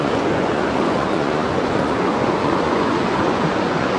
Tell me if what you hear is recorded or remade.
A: remade